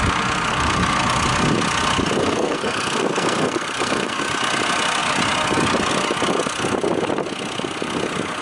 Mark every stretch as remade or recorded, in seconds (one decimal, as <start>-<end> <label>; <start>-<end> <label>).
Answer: 0.0-0.5 recorded; 0.5-1.0 remade; 1.0-2.2 recorded; 2.2-4.2 remade; 4.2-8.4 recorded